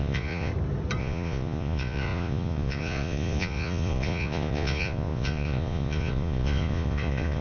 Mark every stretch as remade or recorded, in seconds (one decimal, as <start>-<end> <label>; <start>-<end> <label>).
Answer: 0.0-0.5 remade; 0.5-1.0 recorded; 1.0-7.4 remade